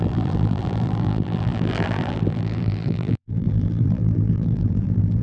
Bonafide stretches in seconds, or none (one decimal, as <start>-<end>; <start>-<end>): none